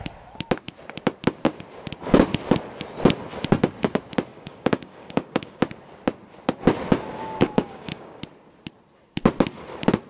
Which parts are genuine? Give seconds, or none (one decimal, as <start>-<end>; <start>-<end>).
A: 0.0-4.3; 5.6-7.1; 8.2-10.1